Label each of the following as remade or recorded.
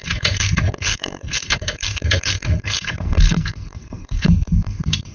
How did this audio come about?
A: remade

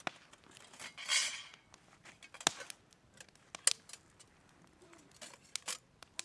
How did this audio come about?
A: recorded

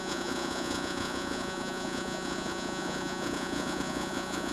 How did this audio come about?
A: remade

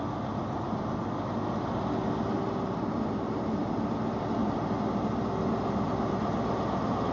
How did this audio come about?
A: recorded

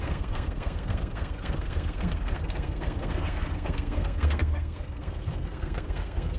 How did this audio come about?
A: remade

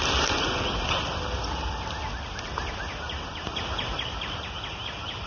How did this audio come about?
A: recorded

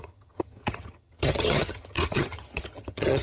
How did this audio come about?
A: remade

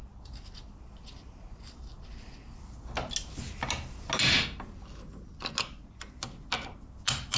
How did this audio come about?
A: recorded